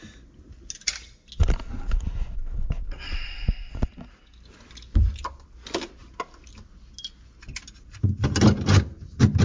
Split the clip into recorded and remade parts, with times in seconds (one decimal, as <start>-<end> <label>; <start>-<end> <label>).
0.0-9.4 recorded